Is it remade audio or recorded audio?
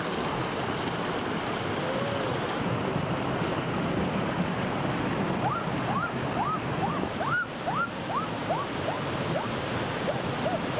recorded